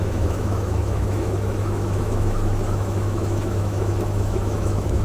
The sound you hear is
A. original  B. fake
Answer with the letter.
B